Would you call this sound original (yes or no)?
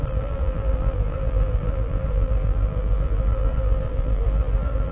no